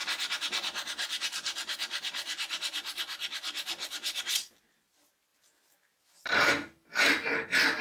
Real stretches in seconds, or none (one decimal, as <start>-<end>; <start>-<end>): 4.2-5.3; 6.5-7.8